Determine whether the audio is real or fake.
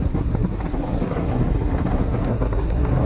fake